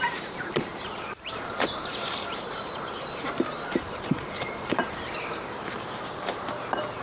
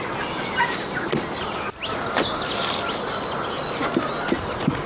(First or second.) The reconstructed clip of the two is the first